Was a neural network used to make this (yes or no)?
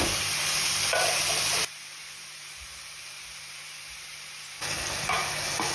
no